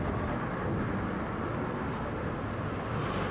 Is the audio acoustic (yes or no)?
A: yes